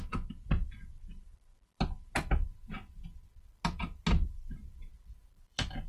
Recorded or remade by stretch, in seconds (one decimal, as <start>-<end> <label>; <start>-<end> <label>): 0.0-4.9 recorded; 4.9-5.9 remade